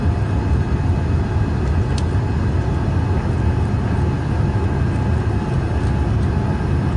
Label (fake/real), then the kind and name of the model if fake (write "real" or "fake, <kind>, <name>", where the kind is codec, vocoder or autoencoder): real